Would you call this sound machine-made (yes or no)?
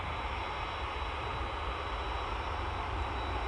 no